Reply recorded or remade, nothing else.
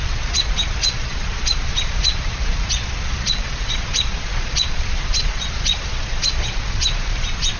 remade